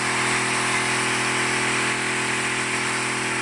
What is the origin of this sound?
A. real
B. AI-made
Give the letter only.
A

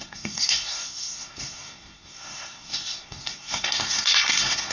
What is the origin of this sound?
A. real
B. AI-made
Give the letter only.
B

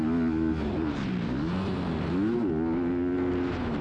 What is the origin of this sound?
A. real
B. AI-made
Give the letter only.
A